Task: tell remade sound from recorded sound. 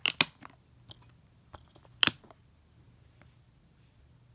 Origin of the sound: recorded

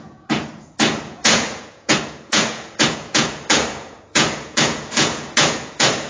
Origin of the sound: remade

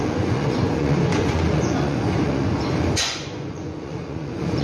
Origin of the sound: remade